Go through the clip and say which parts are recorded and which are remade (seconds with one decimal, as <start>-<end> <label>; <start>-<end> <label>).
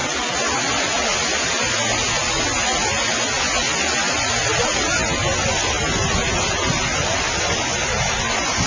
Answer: 0.0-8.7 recorded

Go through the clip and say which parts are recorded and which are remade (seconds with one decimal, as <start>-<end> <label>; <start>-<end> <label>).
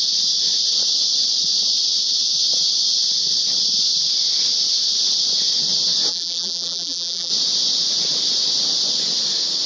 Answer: 0.0-6.1 recorded; 6.1-7.3 remade; 7.3-9.7 recorded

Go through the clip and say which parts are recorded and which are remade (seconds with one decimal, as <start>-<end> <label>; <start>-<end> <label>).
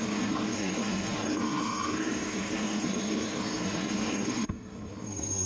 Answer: 0.0-5.5 remade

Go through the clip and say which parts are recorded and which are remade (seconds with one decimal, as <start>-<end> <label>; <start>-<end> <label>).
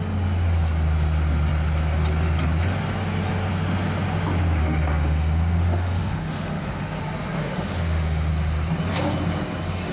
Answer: 0.0-4.6 recorded; 4.6-7.0 remade; 7.0-7.4 recorded; 7.4-8.3 remade; 8.3-9.9 recorded